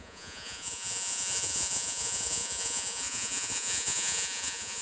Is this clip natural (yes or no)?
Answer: no